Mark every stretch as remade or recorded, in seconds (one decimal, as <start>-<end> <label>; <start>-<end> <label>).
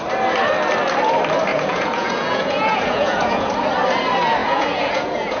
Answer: 0.0-1.5 recorded; 1.5-3.5 remade; 3.5-4.4 recorded; 4.4-5.4 remade